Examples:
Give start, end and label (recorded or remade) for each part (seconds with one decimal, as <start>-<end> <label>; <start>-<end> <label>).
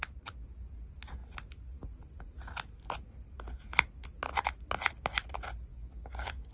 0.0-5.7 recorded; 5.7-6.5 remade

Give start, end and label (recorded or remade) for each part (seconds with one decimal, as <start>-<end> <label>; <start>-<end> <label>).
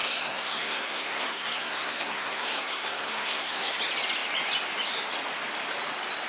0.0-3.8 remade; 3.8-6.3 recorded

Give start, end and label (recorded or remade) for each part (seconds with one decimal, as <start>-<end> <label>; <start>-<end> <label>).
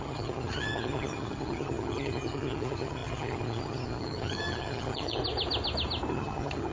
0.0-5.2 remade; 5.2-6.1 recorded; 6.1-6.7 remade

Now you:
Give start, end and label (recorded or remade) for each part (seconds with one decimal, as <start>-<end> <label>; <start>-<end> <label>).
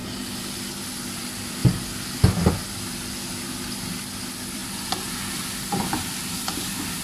0.0-1.0 recorded; 1.0-1.6 remade; 1.6-2.5 recorded; 2.5-7.0 remade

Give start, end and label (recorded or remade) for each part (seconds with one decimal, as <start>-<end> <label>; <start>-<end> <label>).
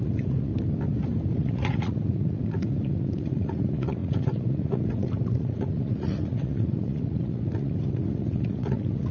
0.0-0.5 remade; 0.5-1.3 recorded; 1.3-9.1 remade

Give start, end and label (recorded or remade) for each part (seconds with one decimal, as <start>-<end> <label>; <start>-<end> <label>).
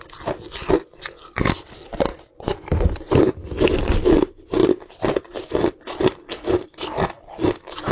0.0-2.1 recorded; 2.1-3.3 remade; 3.3-7.9 recorded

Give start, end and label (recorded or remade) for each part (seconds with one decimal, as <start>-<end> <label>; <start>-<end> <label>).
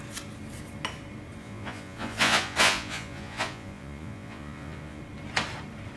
0.0-1.4 recorded; 1.4-5.0 remade; 5.0-6.0 recorded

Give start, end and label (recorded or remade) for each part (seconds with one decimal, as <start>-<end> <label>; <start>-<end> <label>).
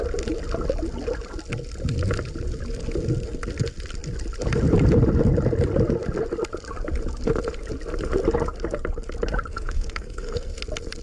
0.0-9.5 recorded; 9.5-10.6 remade; 10.6-11.0 recorded